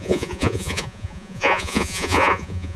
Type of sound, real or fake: fake